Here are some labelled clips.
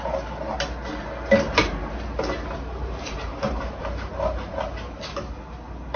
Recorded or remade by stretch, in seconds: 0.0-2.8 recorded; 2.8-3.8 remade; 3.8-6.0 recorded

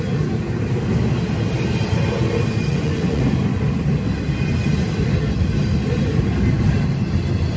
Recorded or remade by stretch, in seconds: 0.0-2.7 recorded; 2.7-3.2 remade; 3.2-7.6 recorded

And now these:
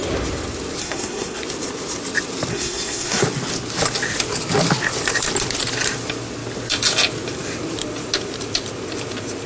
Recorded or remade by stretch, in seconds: 0.0-0.8 recorded; 0.8-1.4 remade; 1.4-2.5 recorded; 2.5-3.2 remade; 3.2-9.5 recorded

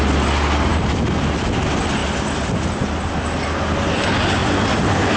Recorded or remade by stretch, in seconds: 0.0-2.0 recorded; 2.0-3.1 remade; 3.1-4.4 recorded; 4.4-5.2 remade

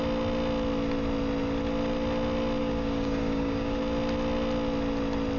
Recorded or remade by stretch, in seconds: 0.0-2.6 recorded; 2.6-3.8 remade; 3.8-5.4 recorded

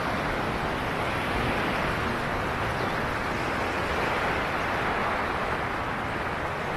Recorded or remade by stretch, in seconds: 0.0-6.8 recorded

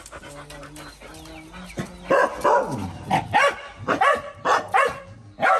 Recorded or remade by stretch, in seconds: 0.0-5.6 recorded